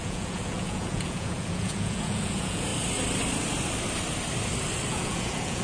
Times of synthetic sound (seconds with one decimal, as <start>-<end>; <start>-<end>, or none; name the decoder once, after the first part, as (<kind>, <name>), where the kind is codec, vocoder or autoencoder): 0.0-2.7 (vocoder, Vocos); 4.9-5.6